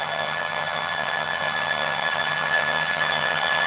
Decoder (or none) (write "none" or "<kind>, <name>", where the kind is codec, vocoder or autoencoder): vocoder, HiFi-GAN